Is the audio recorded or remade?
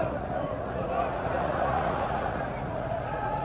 remade